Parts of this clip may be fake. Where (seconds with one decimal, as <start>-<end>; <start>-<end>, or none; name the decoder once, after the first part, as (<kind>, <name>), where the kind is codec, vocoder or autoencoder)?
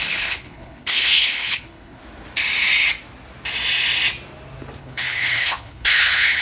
0.0-2.0 (codec, HILCodec); 4.8-6.4